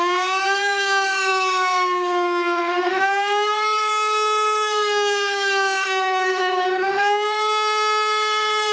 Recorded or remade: remade